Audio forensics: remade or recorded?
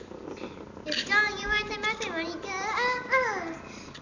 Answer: recorded